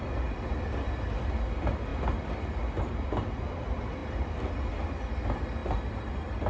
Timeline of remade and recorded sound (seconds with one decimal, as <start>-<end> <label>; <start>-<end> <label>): 0.0-6.5 recorded